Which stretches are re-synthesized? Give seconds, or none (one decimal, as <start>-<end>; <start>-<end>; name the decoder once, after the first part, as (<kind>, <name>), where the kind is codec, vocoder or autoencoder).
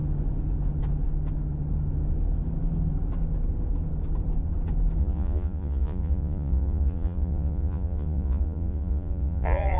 5.0-9.8 (vocoder, Vocos)